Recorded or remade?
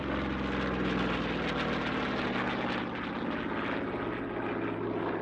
recorded